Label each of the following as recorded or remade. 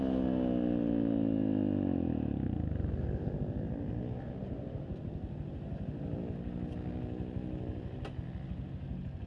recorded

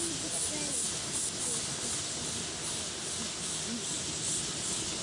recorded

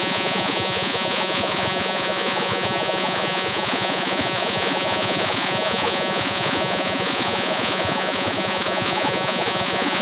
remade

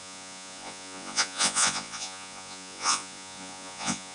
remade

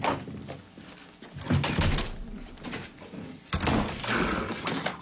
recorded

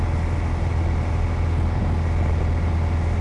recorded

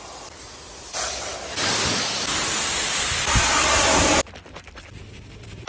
recorded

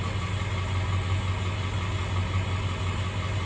recorded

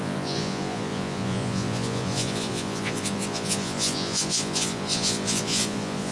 remade